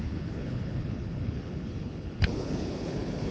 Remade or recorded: remade